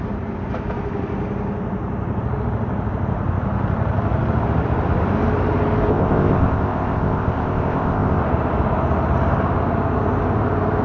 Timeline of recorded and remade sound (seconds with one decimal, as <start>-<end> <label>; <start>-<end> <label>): 0.0-5.9 recorded; 5.9-8.2 remade; 8.2-10.8 recorded